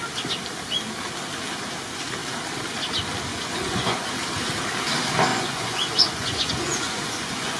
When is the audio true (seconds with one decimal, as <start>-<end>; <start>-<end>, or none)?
0.0-3.3; 4.1-5.3